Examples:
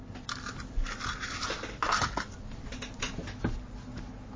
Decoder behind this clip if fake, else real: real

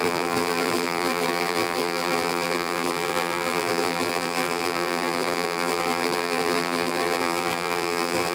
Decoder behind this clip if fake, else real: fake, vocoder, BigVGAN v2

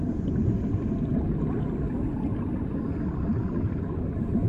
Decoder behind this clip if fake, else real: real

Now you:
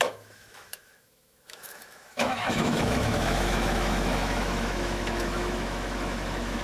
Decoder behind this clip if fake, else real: fake, autoencoder, DAC-VAE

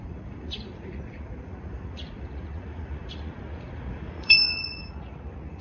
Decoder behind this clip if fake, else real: fake, vocoder, Vocos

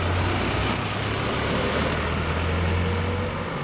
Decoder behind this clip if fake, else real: real